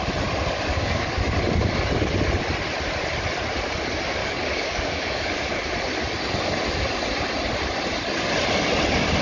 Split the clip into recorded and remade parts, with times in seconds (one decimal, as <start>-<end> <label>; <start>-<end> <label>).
0.0-0.7 recorded; 0.7-1.3 remade; 1.3-4.2 recorded; 4.2-5.6 remade; 5.6-9.2 recorded

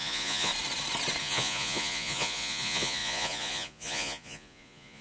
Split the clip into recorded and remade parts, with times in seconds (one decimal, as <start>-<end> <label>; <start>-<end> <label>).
0.0-0.5 remade; 0.5-1.2 recorded; 1.2-5.0 remade

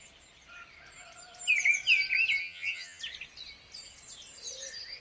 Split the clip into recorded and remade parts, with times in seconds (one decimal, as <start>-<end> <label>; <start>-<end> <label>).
0.0-2.4 recorded; 2.4-3.0 remade; 3.0-5.0 recorded